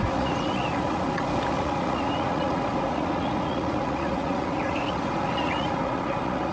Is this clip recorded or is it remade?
remade